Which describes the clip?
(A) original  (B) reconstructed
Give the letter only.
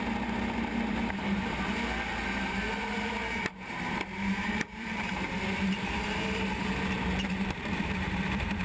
B